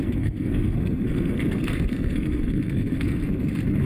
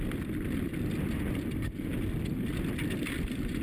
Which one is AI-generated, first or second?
first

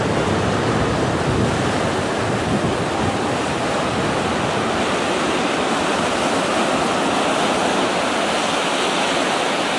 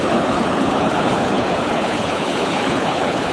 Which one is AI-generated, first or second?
second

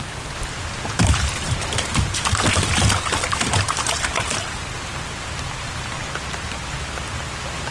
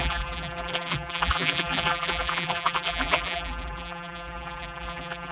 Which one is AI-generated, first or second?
second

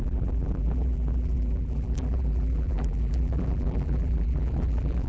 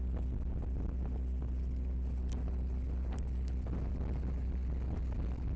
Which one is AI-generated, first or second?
first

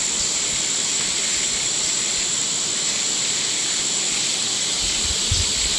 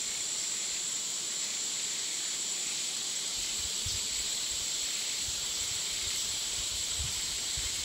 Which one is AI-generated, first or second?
second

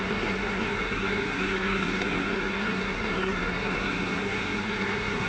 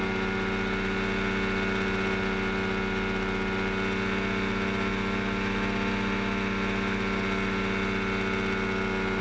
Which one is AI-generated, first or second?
first